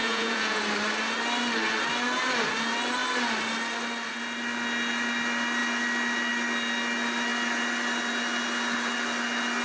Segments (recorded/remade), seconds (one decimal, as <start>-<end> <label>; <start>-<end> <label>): 0.0-0.6 remade; 0.6-9.6 recorded